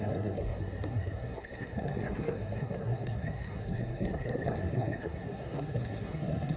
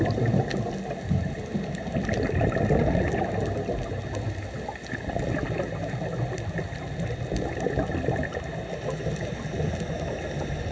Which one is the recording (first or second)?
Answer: second